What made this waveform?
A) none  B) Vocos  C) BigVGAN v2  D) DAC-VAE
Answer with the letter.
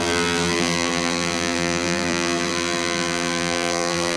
C